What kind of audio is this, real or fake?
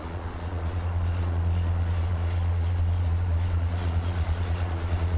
fake